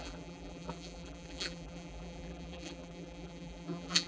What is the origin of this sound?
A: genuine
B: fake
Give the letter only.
B